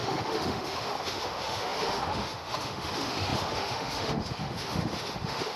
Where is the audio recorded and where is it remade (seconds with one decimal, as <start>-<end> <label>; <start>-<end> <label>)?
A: 0.0-5.6 remade